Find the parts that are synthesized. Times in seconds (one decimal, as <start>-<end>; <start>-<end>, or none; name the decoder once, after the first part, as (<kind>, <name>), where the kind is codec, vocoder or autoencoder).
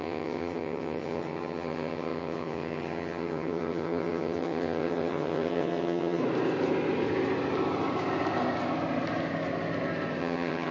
0.0-6.2 (vocoder, HiFi-GAN); 10.2-10.7